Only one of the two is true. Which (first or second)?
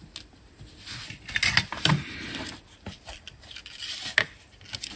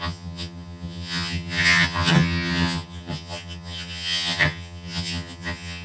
first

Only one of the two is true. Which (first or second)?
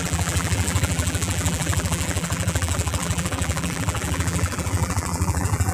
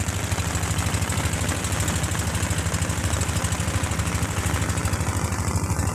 second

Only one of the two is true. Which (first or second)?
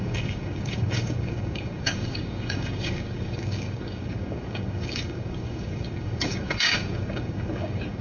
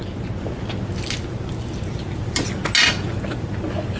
second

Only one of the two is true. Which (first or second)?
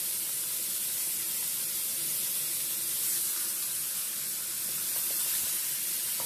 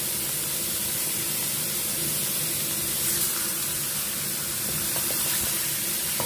first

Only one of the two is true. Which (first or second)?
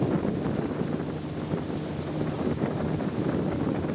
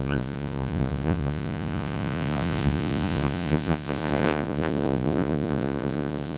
first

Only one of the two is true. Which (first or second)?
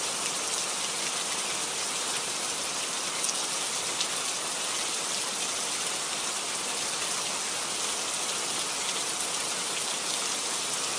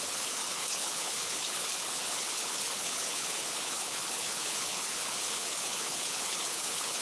first